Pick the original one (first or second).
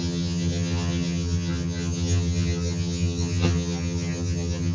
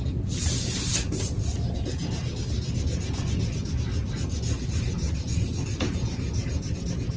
second